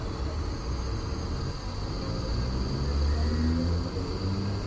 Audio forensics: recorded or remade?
recorded